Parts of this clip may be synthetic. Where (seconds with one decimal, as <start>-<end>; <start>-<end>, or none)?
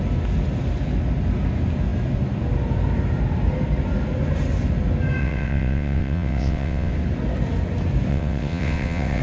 5.2-6.9; 8.1-9.2